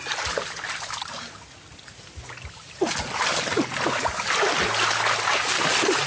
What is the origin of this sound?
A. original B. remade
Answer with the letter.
A